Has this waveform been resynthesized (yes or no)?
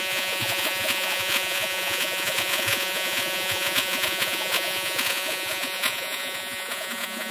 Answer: yes